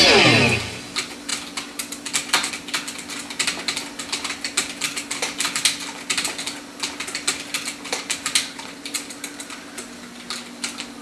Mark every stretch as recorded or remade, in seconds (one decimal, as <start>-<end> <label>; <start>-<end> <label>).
0.0-11.0 recorded